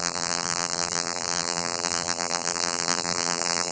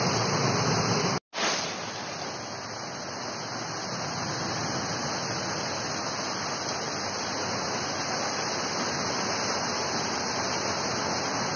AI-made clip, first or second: first